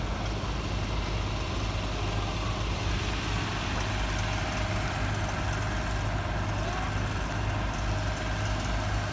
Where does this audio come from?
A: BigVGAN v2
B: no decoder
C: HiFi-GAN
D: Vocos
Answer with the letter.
B